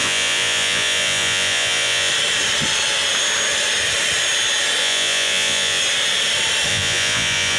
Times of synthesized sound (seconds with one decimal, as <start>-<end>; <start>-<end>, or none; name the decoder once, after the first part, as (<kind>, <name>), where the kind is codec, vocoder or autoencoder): 0.0-2.1 (vocoder, Vocos); 4.8-5.8; 6.7-7.6